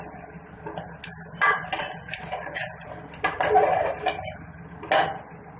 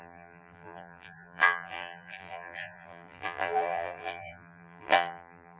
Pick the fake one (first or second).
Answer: second